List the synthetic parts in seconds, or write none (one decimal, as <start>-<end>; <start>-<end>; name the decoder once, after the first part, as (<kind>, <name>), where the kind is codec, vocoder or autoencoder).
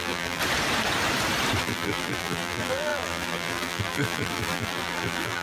0.0-0.4 (vocoder, BigVGAN v2); 1.6-5.4